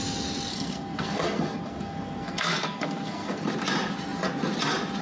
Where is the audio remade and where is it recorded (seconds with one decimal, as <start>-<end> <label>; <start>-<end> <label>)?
0.0-0.5 recorded; 0.5-3.5 remade; 3.5-5.0 recorded